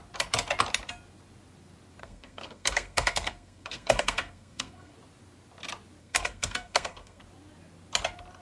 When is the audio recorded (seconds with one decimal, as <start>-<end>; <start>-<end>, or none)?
0.0-2.0; 4.9-6.0; 7.2-8.4